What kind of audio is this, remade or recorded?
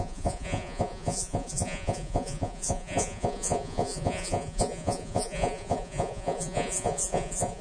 remade